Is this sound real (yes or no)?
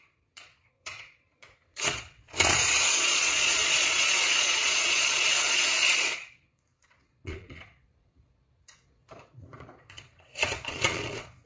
no